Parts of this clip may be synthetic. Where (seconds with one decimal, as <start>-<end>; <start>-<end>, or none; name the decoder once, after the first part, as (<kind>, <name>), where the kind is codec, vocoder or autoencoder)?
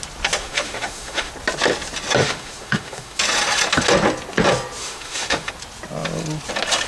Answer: 0.4-1.3 (autoencoder, DAC-VAE); 2.2-3.2; 4.8-5.5